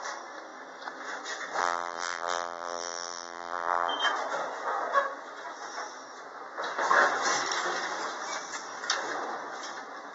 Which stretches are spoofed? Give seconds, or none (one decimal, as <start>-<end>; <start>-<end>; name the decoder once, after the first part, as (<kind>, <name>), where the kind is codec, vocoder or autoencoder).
1.6-3.9 (vocoder, BigVGAN v2)